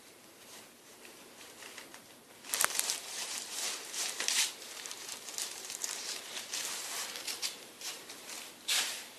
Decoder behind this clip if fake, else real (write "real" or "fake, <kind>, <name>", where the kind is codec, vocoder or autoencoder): fake, vocoder, BigVGAN v2